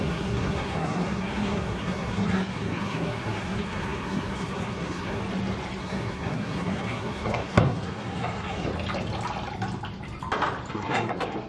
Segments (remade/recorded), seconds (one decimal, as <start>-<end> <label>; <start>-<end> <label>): 0.0-5.2 remade; 5.2-5.8 recorded; 5.8-8.7 remade; 8.7-10.7 recorded; 10.7-11.5 remade